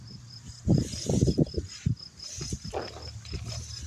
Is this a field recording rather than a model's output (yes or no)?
yes